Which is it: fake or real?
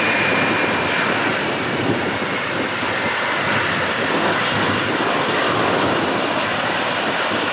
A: fake